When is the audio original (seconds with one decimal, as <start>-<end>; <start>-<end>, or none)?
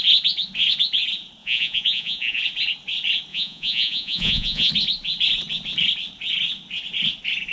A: 0.0-1.4; 2.4-3.3; 4.7-7.5